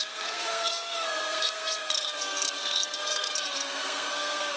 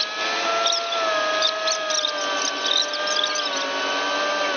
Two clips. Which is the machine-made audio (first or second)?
first